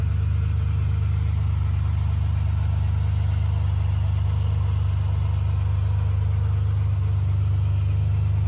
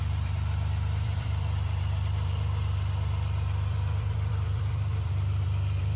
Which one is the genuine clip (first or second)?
first